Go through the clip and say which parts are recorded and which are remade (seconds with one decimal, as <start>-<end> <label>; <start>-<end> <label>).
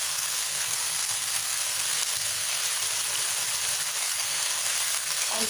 0.0-2.6 remade; 2.6-4.0 recorded; 4.0-5.5 remade